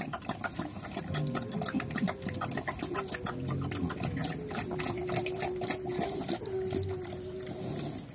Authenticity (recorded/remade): recorded